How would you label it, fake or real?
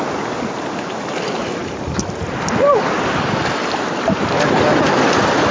real